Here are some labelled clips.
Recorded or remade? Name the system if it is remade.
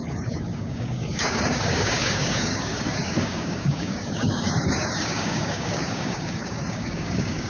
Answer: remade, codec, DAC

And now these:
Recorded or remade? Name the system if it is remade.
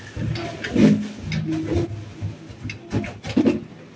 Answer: recorded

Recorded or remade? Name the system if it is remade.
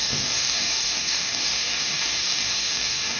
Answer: remade, codec, DAC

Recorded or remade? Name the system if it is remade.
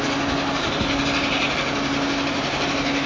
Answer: recorded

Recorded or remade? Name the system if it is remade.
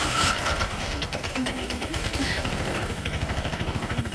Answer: remade, codec, DAC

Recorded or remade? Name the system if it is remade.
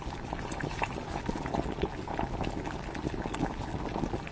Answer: recorded